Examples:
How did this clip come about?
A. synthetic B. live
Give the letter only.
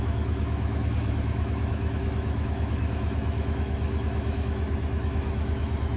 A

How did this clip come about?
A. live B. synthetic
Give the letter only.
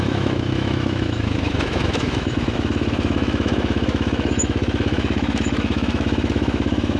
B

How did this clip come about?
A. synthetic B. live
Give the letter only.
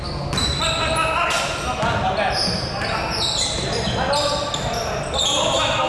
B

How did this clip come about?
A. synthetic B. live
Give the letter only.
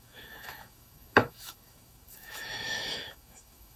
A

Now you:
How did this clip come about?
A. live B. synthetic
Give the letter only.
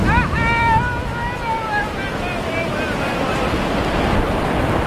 A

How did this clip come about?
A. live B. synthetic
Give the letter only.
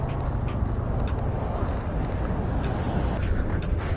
A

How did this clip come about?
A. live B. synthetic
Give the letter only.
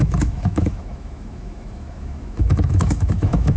B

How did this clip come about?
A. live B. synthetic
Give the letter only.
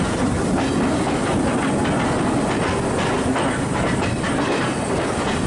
A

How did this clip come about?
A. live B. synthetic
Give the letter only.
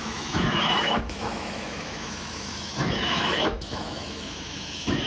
B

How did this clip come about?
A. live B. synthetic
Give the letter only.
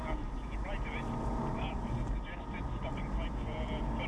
A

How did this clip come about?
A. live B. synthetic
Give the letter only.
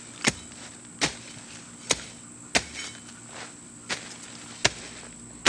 A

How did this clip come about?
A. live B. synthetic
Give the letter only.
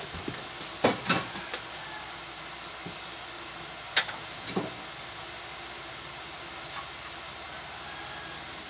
A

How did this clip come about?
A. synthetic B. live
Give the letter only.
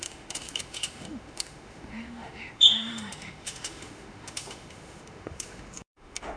A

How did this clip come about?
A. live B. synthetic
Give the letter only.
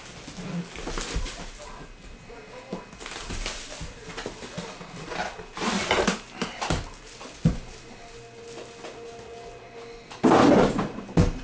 A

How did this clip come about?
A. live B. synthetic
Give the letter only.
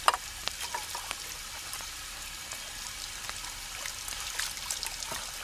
A